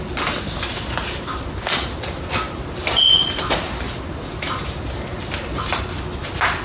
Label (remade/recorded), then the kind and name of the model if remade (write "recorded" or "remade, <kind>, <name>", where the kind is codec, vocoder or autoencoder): recorded